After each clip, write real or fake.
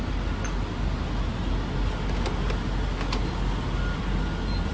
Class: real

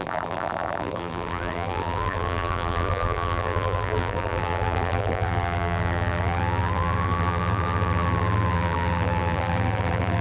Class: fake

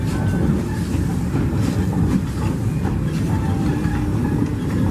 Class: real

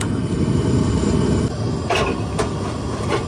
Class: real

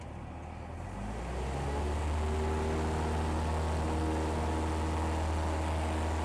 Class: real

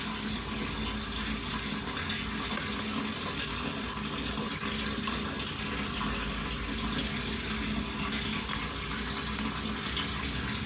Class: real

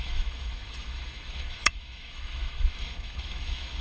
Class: fake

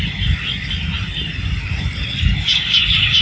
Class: real